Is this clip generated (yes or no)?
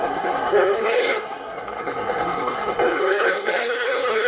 yes